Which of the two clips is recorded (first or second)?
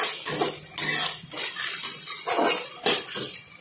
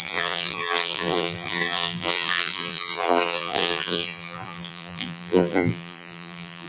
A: first